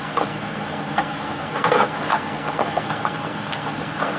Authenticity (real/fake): fake